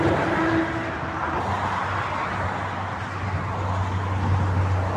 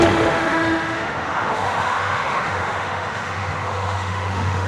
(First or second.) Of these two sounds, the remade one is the second